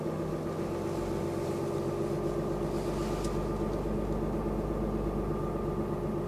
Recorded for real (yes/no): yes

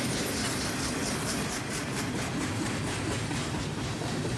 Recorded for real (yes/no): no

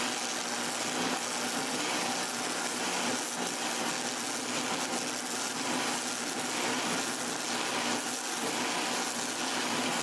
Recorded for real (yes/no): yes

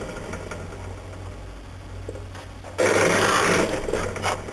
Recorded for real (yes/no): yes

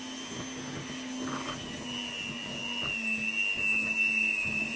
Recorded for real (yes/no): yes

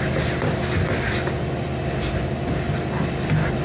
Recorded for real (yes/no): yes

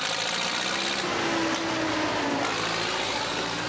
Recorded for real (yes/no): yes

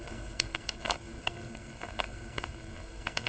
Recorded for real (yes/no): no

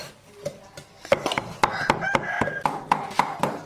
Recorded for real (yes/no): yes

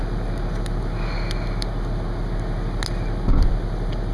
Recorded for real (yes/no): yes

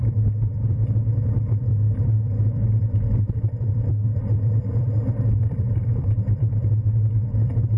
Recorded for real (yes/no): no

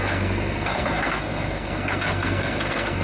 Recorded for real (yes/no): no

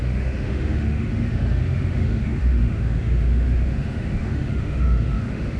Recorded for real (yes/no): no